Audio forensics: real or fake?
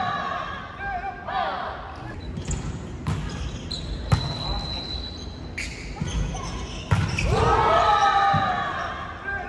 real